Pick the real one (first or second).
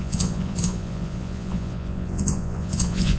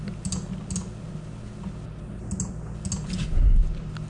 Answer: second